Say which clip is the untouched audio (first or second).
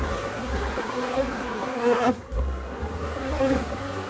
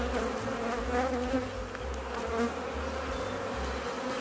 second